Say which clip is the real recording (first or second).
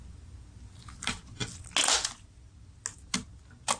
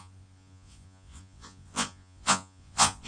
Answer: first